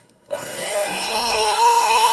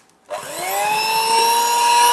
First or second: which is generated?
first